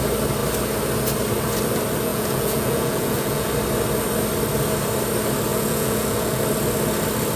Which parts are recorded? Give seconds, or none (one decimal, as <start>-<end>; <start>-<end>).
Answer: 0.0-2.1; 3.5-5.5; 6.4-7.4